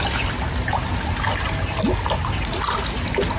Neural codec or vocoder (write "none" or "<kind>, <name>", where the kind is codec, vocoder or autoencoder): none